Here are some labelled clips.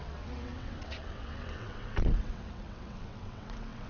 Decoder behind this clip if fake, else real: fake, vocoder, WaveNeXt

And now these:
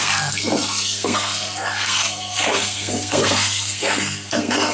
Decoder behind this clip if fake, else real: fake, codec, SNAC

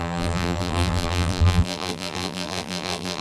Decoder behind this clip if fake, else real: fake, vocoder, BigVGAN v2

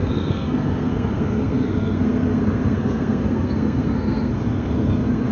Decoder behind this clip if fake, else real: fake, codec, SNAC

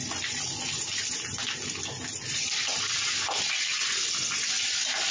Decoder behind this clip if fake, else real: real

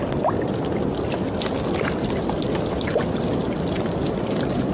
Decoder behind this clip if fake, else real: real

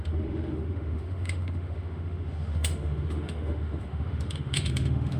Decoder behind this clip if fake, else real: fake, autoencoder, DAC-VAE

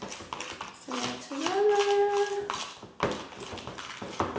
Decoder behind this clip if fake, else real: real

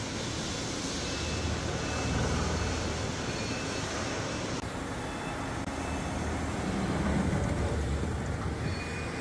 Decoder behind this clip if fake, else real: real